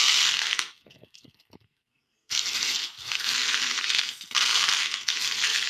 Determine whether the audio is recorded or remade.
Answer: remade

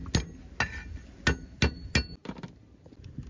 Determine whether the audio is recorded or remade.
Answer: recorded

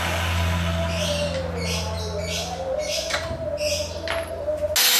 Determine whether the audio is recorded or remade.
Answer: recorded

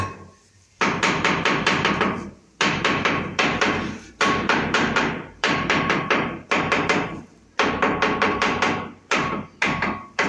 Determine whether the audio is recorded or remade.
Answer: remade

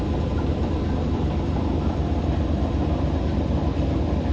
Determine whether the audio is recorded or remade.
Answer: recorded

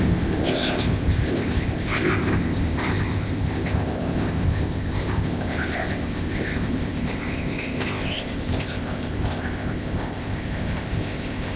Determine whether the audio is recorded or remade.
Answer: remade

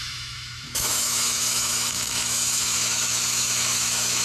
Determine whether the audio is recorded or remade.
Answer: remade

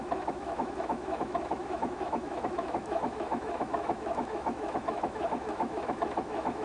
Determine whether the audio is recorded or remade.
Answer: remade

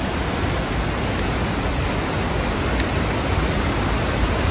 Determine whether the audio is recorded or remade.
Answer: recorded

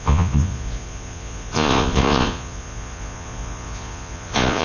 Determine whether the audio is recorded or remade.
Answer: remade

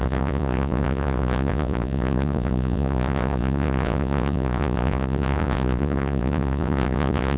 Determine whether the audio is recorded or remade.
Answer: remade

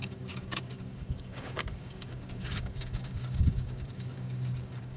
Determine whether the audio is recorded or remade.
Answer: remade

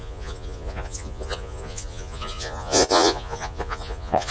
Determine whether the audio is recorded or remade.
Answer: remade